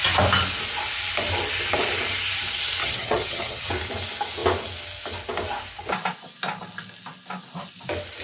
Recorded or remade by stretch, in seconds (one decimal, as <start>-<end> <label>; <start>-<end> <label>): 0.0-2.8 recorded; 2.8-3.7 remade; 3.7-8.2 recorded

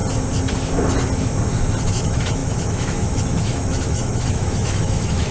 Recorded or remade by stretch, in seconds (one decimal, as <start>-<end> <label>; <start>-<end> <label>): 0.0-1.9 recorded; 1.9-5.3 remade

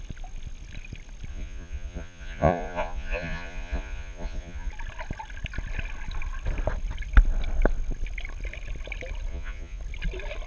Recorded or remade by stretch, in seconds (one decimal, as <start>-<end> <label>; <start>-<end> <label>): 0.0-1.3 recorded; 1.3-4.7 remade; 4.7-9.3 recorded; 9.3-9.8 remade; 9.8-10.5 recorded

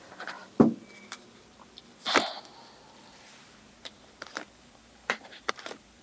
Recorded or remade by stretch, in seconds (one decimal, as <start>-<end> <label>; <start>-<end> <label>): 0.0-0.4 remade; 0.4-3.0 recorded; 3.0-6.0 remade